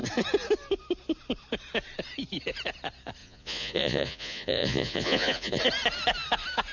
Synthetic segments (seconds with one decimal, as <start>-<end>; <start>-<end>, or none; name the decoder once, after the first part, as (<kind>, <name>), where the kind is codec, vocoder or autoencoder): 3.2-5.6 (vocoder, Vocos)